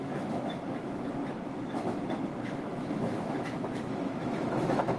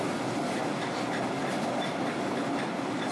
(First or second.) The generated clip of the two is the first